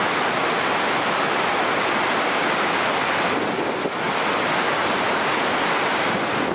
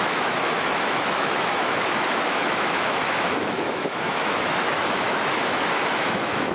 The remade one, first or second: second